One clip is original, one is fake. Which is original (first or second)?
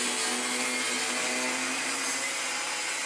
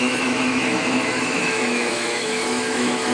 first